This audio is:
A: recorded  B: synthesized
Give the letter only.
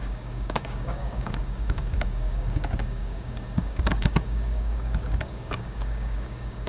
B